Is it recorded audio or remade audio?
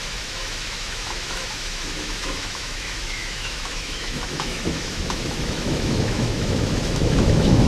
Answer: remade